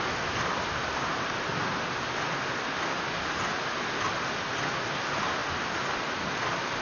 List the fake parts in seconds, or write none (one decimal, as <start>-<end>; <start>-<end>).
none

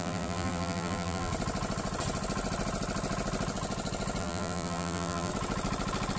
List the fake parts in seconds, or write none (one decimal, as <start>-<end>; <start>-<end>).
0.0-1.3; 4.2-5.3

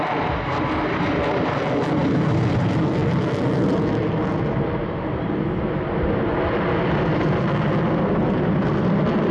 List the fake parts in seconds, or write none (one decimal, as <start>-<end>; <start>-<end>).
none